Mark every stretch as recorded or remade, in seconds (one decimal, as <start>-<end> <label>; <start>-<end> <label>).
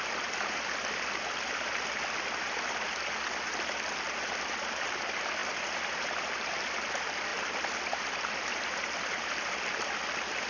0.0-10.5 recorded